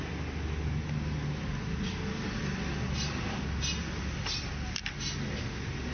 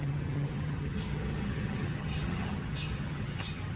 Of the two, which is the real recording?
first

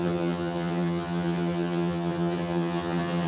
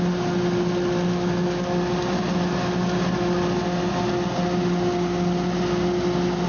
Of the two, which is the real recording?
second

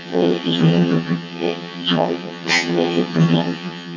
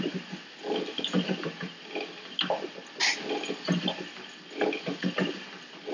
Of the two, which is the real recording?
second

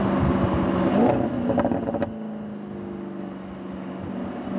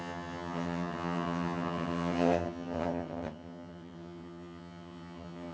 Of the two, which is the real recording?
first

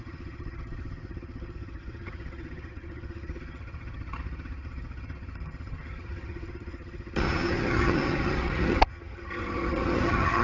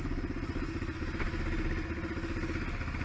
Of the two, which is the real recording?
second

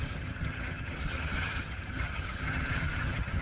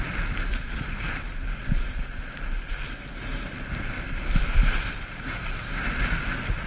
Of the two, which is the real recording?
second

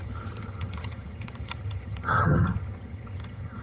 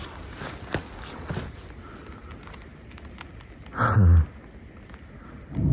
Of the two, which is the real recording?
second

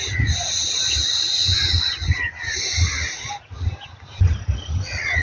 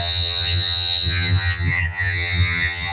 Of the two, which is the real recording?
first